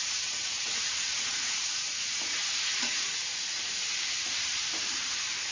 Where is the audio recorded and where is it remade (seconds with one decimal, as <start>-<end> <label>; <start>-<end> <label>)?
0.0-3.2 remade; 3.2-5.5 recorded